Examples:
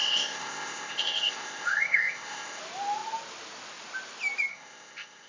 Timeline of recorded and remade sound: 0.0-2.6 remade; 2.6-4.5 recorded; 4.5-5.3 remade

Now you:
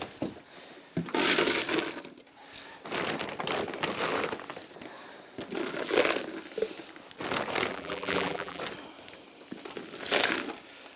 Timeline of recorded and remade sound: 0.0-7.7 recorded; 7.7-8.6 remade; 8.6-11.0 recorded

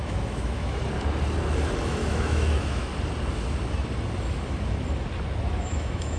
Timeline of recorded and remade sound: 0.0-0.8 remade; 0.8-1.9 recorded; 1.9-2.9 remade; 2.9-5.5 recorded; 5.5-6.2 remade

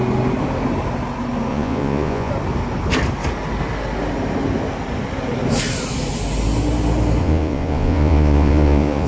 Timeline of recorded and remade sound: 0.0-1.5 recorded; 1.5-2.3 remade; 2.3-7.2 recorded; 7.2-9.1 remade

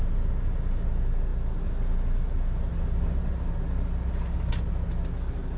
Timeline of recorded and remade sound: 0.0-5.6 recorded

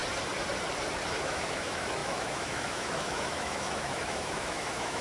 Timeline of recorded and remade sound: 0.0-1.2 recorded; 1.2-5.0 remade

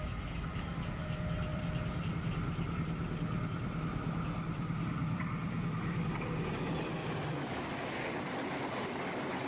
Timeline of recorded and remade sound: 0.0-1.5 recorded; 1.5-2.1 remade; 2.1-7.0 recorded; 7.0-7.5 remade; 7.5-9.5 recorded

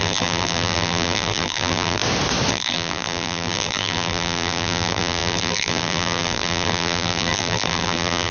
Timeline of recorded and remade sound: 0.0-2.0 remade; 2.0-2.5 recorded; 2.5-8.3 remade